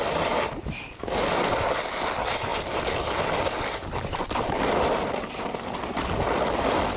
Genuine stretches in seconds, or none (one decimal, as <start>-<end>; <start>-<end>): 0.0-7.0